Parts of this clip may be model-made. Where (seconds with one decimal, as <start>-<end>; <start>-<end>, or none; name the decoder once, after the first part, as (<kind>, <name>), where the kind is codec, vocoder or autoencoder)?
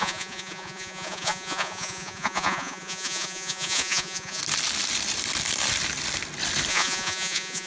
0.0-4.4 (vocoder, Vocos); 6.7-7.7